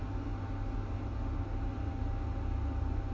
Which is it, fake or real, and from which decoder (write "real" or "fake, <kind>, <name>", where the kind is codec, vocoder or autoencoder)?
real